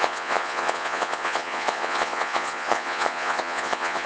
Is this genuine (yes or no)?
no